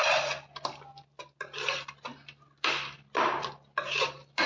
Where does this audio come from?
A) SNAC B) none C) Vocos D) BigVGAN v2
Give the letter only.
B